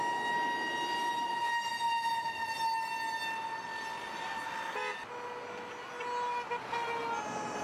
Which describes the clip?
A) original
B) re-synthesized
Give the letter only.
A